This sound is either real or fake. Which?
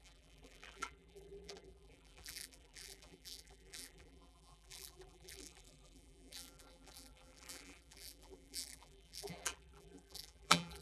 fake